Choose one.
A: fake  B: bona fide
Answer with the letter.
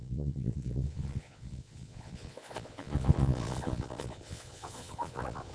A